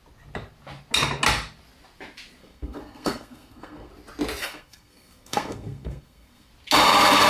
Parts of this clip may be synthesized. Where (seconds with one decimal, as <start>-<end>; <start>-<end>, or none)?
2.4-3.9; 4.4-6.5